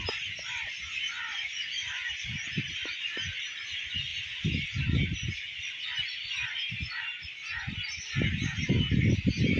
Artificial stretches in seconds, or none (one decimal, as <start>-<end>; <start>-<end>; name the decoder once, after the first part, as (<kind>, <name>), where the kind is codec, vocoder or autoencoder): 1.3-2.1 (vocoder, BigVGAN v2)